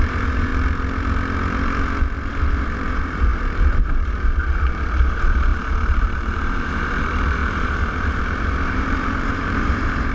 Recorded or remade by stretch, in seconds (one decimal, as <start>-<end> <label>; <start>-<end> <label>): 0.0-0.5 remade; 0.5-2.3 recorded; 2.3-10.1 remade